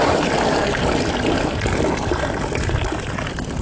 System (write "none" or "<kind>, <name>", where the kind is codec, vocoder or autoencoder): vocoder, BigVGAN v2